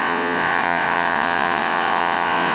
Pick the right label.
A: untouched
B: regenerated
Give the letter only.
B